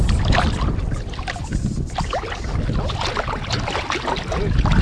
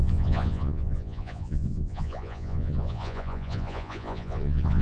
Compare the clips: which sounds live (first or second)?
first